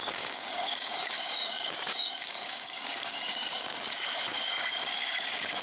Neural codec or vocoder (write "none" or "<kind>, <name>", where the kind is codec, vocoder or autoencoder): codec, DAC